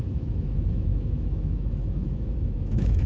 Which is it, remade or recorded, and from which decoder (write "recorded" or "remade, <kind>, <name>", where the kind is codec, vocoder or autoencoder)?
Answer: remade, autoencoder, DAC-VAE